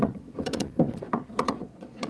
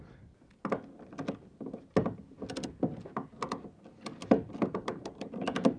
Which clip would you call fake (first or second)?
first